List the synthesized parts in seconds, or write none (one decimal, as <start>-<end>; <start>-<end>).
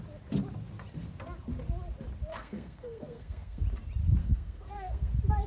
2.3-3.6; 4.2-5.1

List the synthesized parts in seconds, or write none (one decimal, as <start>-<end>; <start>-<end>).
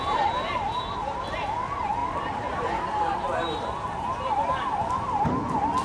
none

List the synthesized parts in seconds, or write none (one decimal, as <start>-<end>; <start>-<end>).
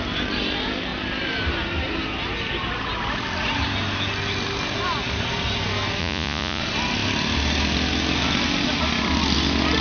6.0-6.6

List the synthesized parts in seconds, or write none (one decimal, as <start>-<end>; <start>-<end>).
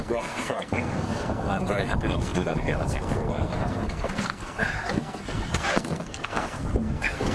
0.0-7.3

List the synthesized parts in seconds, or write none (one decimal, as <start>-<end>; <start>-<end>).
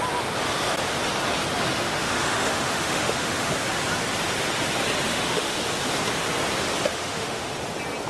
1.7-3.5; 5.1-5.6; 6.9-7.5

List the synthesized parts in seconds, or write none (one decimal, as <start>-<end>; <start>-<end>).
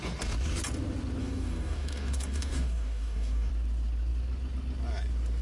1.2-3.5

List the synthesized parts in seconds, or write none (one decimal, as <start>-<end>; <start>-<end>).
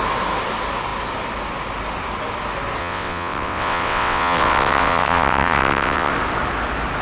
2.8-6.1